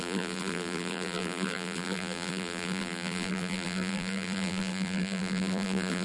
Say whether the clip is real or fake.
fake